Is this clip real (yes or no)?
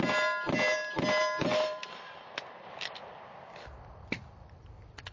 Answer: yes